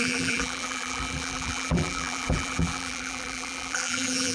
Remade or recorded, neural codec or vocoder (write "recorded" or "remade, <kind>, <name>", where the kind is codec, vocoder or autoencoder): remade, vocoder, BigVGAN v2